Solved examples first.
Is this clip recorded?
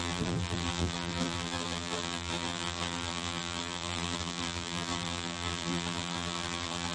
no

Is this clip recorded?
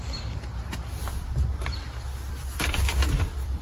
no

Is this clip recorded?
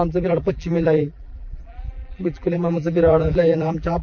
no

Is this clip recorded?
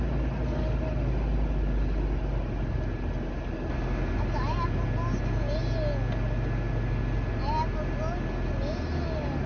yes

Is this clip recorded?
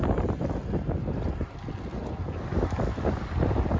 yes